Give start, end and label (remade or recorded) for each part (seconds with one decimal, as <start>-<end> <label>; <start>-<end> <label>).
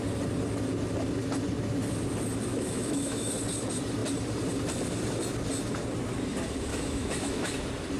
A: 0.0-2.5 recorded; 2.5-3.3 remade; 3.3-6.7 recorded; 6.7-7.5 remade; 7.5-8.0 recorded